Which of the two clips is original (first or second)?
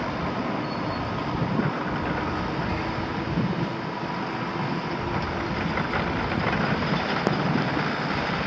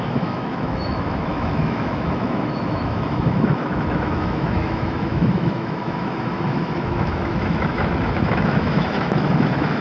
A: first